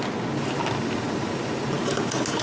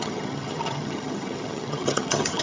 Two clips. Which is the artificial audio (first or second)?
second